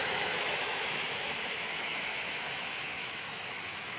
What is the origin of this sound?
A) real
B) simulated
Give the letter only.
B